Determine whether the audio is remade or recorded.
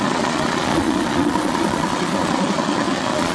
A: remade